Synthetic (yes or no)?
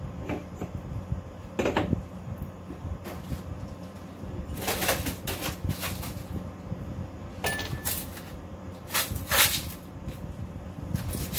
no